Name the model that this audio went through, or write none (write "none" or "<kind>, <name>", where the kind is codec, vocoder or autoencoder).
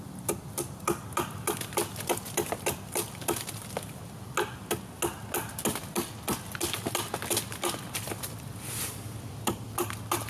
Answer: none